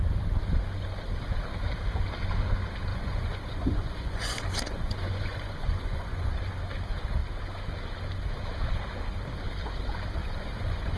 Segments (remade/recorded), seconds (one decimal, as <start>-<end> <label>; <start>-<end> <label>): 0.0-2.9 recorded; 2.9-6.3 remade; 6.3-10.2 recorded; 10.2-11.0 remade